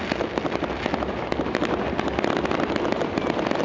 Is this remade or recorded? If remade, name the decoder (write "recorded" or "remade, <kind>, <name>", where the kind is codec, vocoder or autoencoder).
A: recorded